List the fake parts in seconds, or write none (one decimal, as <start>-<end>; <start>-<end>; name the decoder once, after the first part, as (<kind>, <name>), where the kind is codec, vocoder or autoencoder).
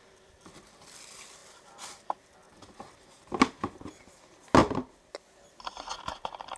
none